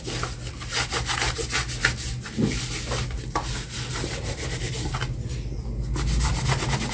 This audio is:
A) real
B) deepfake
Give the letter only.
A